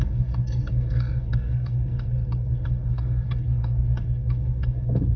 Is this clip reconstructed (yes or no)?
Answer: yes